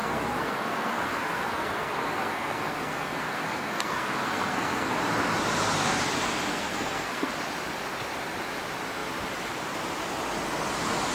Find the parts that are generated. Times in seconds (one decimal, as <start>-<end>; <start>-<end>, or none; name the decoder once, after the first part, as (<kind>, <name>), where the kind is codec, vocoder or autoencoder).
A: 0.0-4.9 (codec, SNAC); 6.5-7.3